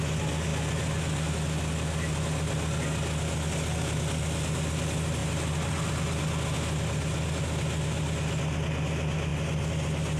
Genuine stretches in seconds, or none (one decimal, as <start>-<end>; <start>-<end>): 0.0-10.2